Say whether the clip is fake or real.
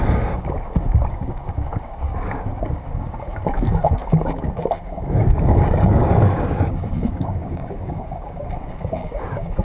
fake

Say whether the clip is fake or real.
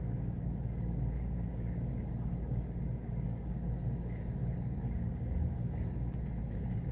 fake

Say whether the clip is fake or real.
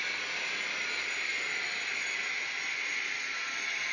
real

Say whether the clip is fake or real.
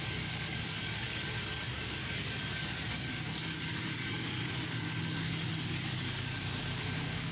fake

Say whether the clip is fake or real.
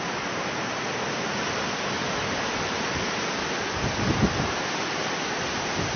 real